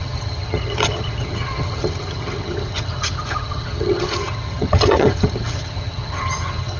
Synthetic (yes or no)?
yes